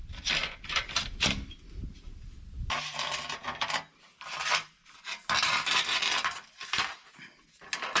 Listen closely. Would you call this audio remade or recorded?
recorded